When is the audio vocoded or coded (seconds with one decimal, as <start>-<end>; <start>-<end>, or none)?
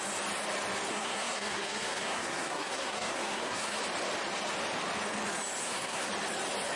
0.9-3.8; 5.6-6.1